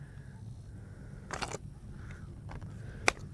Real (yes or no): yes